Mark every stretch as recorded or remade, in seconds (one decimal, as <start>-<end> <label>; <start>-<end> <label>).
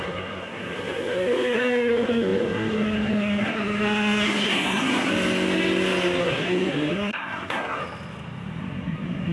0.0-5.1 remade; 5.1-6.2 recorded; 6.2-7.8 remade; 7.8-8.6 recorded; 8.6-9.3 remade